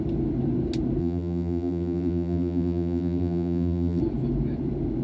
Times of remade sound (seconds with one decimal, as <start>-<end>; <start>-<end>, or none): 1.0-4.0

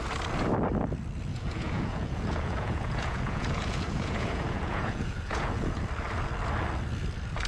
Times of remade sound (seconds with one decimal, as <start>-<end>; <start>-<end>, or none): 1.3-5.8

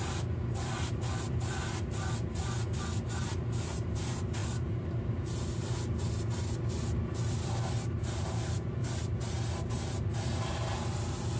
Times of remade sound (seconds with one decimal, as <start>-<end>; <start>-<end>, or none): none

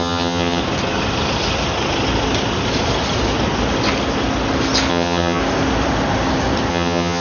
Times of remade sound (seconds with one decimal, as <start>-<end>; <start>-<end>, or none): 0.0-0.6; 4.9-5.4; 6.7-7.2

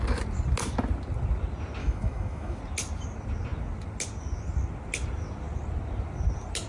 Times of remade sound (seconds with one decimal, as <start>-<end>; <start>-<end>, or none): 1.8-2.6